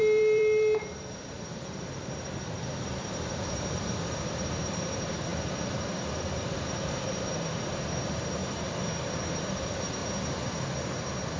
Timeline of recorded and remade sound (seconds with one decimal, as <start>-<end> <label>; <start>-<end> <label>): 0.0-8.4 remade; 8.4-9.4 recorded; 9.4-10.0 remade; 10.0-11.4 recorded